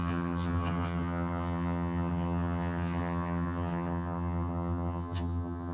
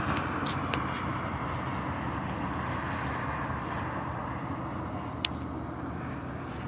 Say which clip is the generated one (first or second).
first